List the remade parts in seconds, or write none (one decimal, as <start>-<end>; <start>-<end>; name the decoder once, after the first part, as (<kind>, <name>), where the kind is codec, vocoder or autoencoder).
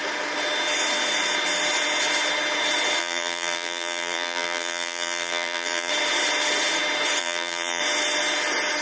3.0-5.9 (vocoder, BigVGAN v2); 7.2-7.8